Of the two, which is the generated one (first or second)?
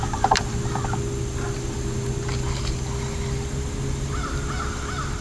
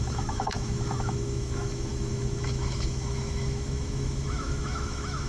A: second